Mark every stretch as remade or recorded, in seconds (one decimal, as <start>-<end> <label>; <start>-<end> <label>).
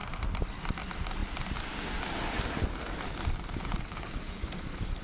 0.0-3.7 recorded; 3.7-4.4 remade; 4.4-5.0 recorded